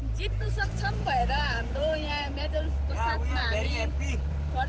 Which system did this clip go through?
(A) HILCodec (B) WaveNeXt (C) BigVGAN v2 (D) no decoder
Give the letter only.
C